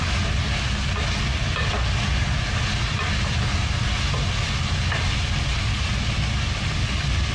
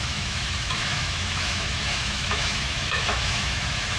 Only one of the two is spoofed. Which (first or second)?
second